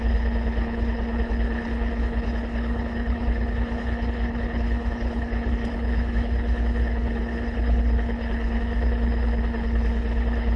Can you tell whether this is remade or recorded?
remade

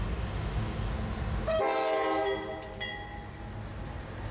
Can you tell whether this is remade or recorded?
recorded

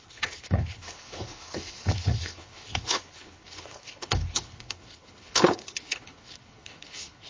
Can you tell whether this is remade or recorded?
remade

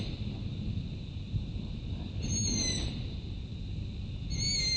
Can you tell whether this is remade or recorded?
recorded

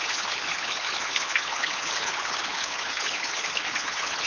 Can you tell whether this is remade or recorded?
remade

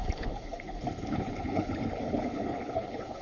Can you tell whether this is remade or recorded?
remade